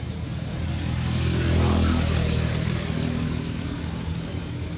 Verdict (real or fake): fake